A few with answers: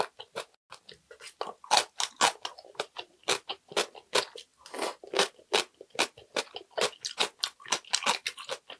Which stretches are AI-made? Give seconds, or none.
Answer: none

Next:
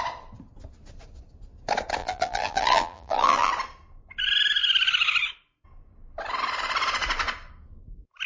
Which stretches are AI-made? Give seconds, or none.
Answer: 2.0-3.5 (vocoder, BigVGAN v2)

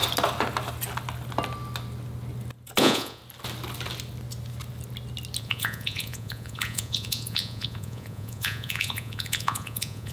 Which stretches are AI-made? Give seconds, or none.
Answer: 2.8-3.2 (vocoder, Vocos); 5.4-10.1

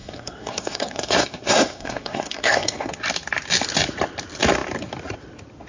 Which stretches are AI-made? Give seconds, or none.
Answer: 0.0-2.9 (codec, SNAC)

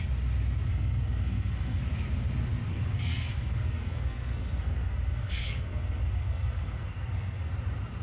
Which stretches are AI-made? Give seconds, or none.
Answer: 0.7-1.8 (codec, SNAC); 2.7-7.5